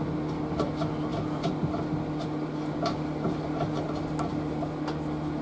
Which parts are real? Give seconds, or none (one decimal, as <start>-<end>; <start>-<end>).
0.0-5.4